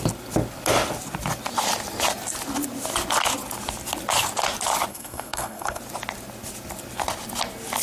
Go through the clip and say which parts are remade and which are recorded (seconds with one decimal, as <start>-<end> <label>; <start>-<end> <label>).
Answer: 0.0-4.9 recorded; 4.9-5.8 remade; 5.8-7.8 recorded